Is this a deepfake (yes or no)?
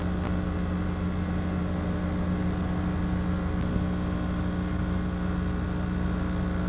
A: no